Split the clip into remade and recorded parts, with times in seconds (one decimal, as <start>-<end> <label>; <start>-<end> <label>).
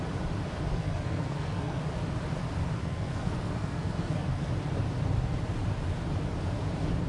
0.0-0.7 recorded; 0.7-1.8 remade; 1.8-2.8 recorded; 2.8-4.5 remade; 4.5-7.1 recorded